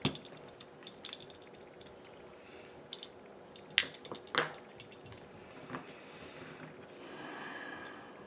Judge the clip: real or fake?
real